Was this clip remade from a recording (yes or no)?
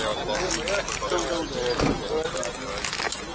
no